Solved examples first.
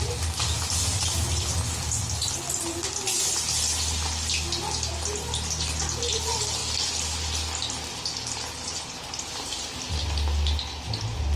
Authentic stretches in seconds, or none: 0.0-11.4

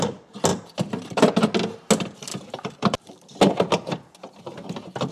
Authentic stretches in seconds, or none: 0.0-0.5; 1.3-2.3; 3.4-5.1

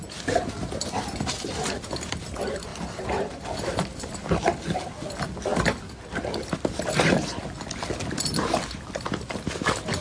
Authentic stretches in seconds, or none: 0.0-10.0

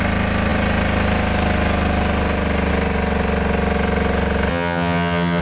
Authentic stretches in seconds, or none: 0.0-4.5

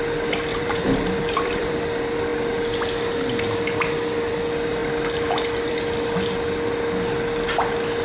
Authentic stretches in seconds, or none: 0.0-0.5; 1.7-8.0

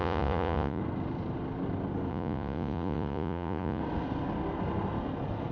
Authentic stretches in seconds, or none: 0.8-2.1; 3.8-5.5

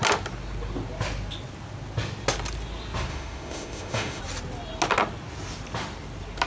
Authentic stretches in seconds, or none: 0.0-3.1; 4.2-6.5